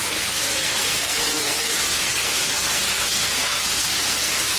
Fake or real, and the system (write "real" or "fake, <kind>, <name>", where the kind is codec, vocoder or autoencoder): fake, codec, SNAC